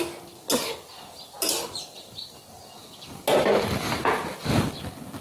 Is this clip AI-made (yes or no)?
no